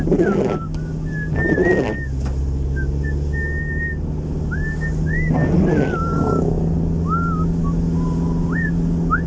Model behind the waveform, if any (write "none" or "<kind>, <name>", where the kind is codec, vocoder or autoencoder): none